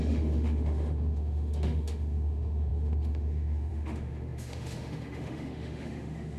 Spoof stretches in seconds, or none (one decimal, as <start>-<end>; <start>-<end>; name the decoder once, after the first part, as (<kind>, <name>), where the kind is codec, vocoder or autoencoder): 0.0-6.4 (autoencoder, DAC-VAE)